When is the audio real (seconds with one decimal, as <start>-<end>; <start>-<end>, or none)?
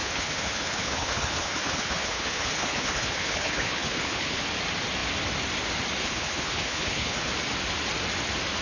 4.4-6.0; 7.3-8.6